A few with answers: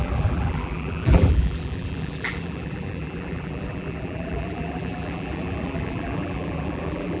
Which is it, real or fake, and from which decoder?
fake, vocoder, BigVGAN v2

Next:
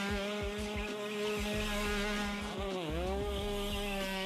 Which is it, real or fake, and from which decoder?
real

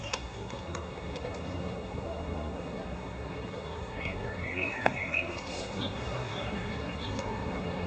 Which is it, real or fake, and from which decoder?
fake, codec, SNAC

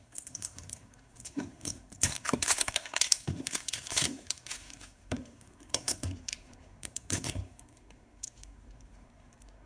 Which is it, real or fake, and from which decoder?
fake, codec, SNAC